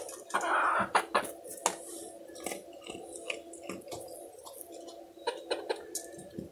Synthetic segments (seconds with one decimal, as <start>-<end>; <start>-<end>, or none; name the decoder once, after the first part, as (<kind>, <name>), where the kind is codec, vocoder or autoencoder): none